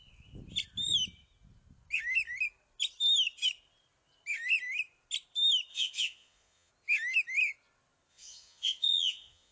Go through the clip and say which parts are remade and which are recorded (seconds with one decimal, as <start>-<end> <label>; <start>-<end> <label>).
0.0-5.7 recorded; 5.7-6.7 remade; 6.7-8.1 recorded; 8.1-9.5 remade